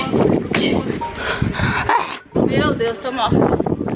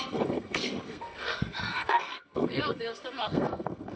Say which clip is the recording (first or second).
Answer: first